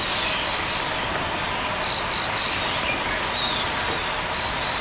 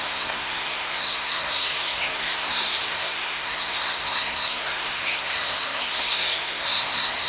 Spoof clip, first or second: second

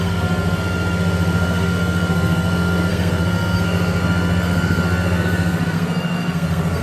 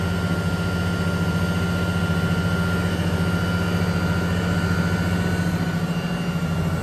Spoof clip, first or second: first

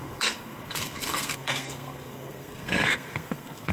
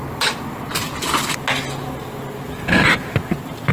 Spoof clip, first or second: first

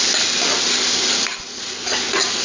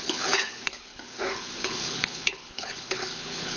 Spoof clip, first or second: second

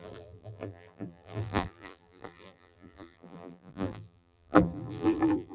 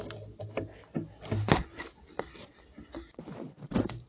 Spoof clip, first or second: first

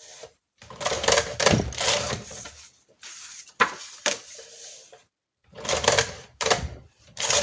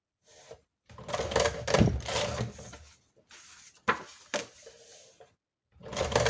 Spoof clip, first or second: first